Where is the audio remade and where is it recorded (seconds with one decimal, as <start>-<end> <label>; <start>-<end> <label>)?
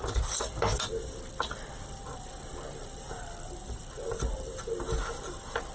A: 0.0-2.0 recorded; 2.0-5.7 remade